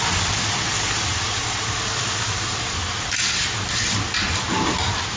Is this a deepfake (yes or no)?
no